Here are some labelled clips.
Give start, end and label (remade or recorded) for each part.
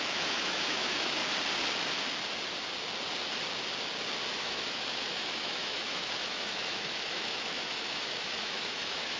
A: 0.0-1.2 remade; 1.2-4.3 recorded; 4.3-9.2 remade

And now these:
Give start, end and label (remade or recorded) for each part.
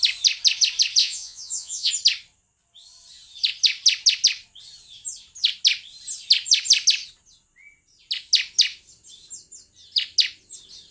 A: 0.0-1.0 recorded; 1.0-1.9 remade; 1.9-10.9 recorded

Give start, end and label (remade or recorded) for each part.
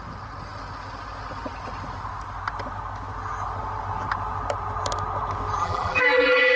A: 0.0-5.6 recorded; 5.6-6.6 remade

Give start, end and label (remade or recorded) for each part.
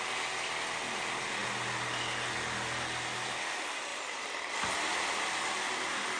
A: 0.0-3.9 recorded; 3.9-4.7 remade; 4.7-6.2 recorded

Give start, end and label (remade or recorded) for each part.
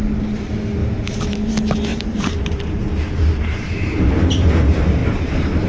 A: 0.0-0.8 recorded; 0.8-1.5 remade; 1.5-1.9 recorded; 1.9-4.1 remade; 4.1-5.0 recorded; 5.0-5.7 remade